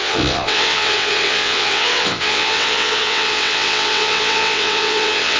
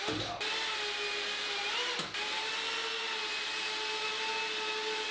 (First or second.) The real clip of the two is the second